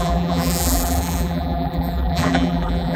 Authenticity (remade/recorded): remade